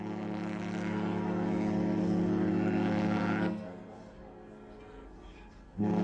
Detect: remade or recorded remade